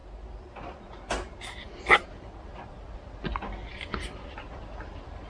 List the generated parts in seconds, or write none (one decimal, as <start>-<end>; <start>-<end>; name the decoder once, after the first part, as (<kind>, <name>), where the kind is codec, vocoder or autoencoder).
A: none